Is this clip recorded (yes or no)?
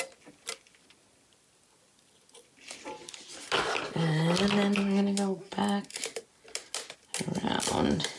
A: yes